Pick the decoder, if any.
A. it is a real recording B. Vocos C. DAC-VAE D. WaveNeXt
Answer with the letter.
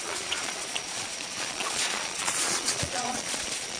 B